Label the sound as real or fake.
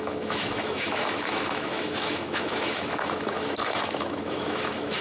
fake